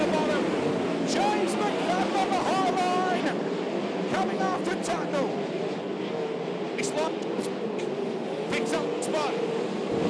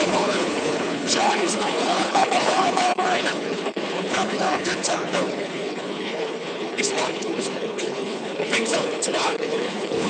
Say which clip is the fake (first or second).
second